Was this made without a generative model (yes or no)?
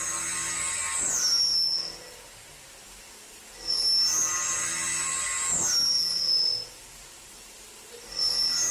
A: yes